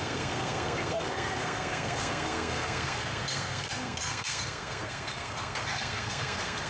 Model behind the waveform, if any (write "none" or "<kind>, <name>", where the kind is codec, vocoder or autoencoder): codec, SNAC